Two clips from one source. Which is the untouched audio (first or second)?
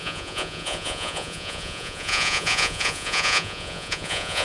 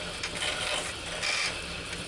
second